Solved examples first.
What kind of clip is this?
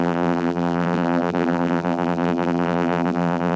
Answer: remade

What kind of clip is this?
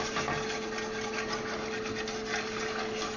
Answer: recorded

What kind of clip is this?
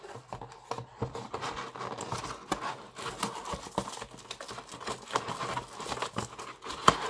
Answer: recorded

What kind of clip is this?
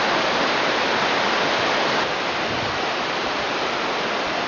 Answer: recorded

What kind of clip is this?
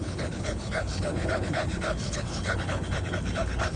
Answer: remade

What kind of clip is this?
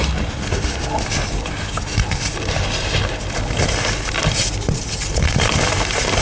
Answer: recorded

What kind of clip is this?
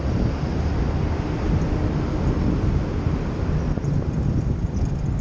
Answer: recorded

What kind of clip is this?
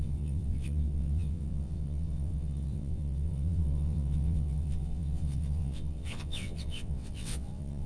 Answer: remade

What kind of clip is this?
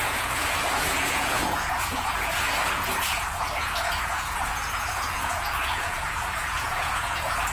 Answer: remade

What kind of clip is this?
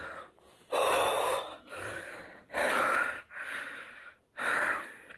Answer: recorded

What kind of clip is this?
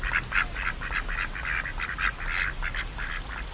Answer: recorded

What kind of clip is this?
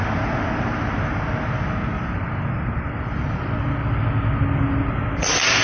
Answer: recorded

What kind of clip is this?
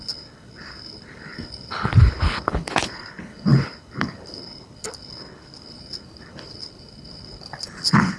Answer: remade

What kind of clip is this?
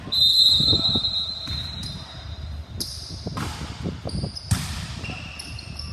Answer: recorded